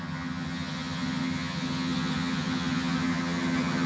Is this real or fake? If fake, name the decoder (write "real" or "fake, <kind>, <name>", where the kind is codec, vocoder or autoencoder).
fake, vocoder, HiFi-GAN